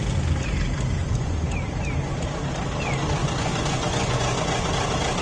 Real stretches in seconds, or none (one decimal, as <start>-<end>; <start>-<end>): 0.0-1.0; 1.5-3.2; 4.7-5.2